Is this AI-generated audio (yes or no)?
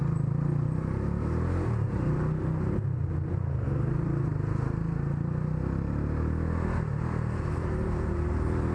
no